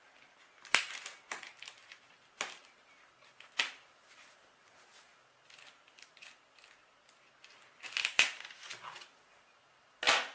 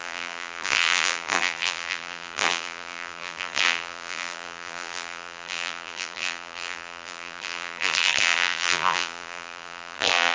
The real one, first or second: first